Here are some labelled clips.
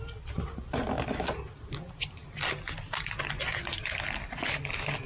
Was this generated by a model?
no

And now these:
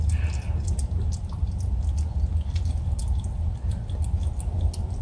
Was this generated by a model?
no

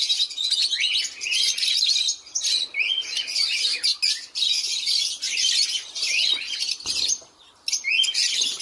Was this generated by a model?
no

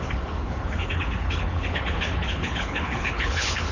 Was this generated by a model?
yes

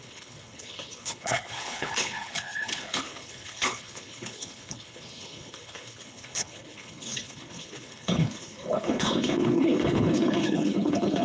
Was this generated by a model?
yes